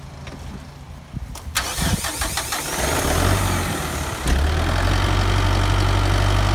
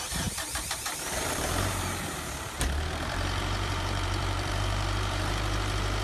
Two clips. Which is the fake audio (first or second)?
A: second